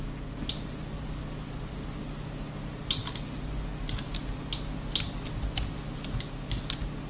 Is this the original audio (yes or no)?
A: yes